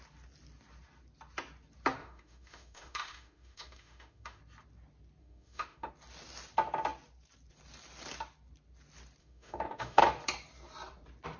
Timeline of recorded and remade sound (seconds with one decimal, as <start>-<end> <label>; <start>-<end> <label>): 0.0-2.0 recorded; 2.0-4.4 remade; 4.4-5.2 recorded; 5.2-5.9 remade; 5.9-9.2 recorded; 9.2-10.0 remade; 10.0-11.4 recorded